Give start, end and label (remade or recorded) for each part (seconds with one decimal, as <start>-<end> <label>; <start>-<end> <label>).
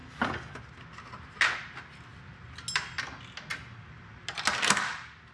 0.0-0.6 remade; 0.6-5.3 recorded